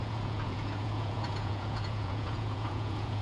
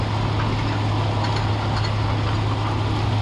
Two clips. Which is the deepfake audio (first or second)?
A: first